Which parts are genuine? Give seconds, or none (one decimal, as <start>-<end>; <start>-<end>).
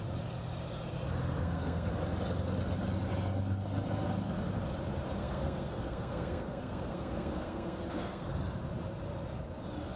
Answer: 0.0-1.4; 1.9-5.2; 8.3-10.0